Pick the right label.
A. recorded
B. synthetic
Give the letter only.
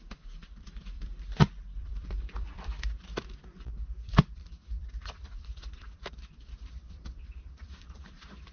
B